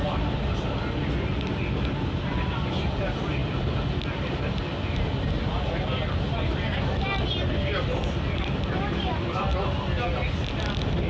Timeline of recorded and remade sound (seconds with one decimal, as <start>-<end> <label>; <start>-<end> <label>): 0.0-11.1 recorded